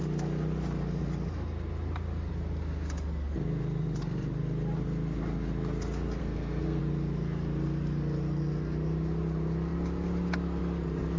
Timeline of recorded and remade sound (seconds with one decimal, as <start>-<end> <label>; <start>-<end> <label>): 0.0-6.2 recorded; 6.2-6.8 remade; 6.8-11.2 recorded